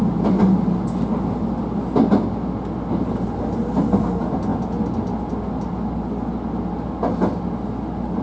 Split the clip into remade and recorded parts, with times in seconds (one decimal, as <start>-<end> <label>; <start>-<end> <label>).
0.0-8.2 recorded